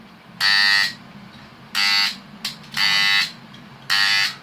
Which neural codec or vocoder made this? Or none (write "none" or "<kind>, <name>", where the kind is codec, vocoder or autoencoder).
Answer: none